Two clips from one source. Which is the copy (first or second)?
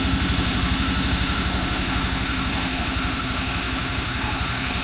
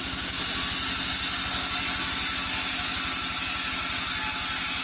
first